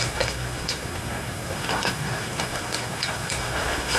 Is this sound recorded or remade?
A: remade